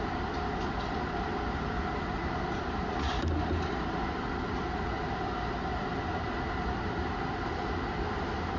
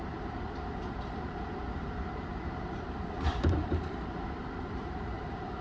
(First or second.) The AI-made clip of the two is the second